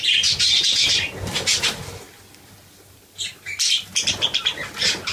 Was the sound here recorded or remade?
recorded